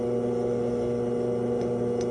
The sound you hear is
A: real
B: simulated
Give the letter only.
A